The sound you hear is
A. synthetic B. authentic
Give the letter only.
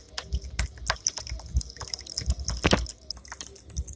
B